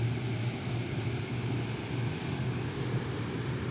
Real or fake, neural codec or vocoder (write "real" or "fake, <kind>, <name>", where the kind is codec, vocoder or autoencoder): real